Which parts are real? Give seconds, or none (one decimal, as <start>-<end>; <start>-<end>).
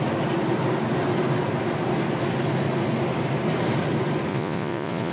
0.0-4.3